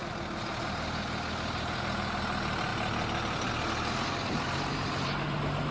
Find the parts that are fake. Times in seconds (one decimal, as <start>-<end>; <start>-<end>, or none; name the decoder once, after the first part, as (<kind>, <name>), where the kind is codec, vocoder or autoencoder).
none